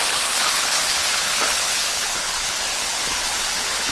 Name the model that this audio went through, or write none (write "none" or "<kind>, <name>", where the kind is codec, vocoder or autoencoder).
codec, HILCodec